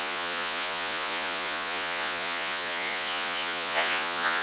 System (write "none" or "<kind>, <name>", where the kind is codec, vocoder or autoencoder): vocoder, Vocos